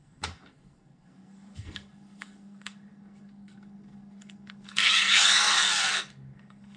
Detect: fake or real fake